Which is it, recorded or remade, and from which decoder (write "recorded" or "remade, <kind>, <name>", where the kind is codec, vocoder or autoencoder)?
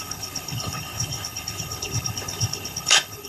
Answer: remade, codec, HILCodec